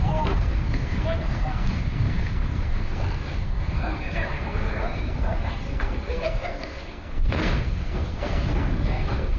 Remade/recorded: remade